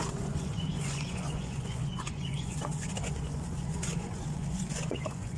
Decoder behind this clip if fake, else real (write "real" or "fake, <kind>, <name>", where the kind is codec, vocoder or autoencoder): fake, vocoder, Vocos